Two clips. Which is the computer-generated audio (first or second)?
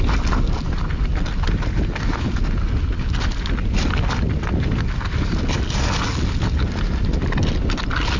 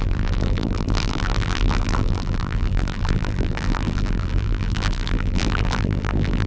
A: second